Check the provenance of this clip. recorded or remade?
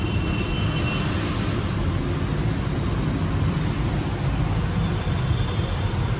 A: recorded